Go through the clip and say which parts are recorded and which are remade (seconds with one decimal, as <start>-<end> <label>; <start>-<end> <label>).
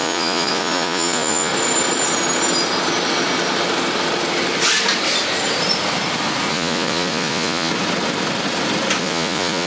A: 0.0-1.5 remade; 1.5-6.5 recorded; 6.5-7.7 remade; 7.7-9.0 recorded; 9.0-9.7 remade